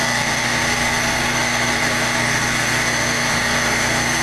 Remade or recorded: remade